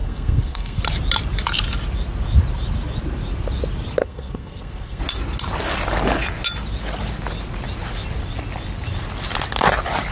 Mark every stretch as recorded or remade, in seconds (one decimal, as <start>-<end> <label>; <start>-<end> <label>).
0.0-0.8 remade; 0.8-4.0 recorded; 4.0-5.0 remade; 5.0-10.1 recorded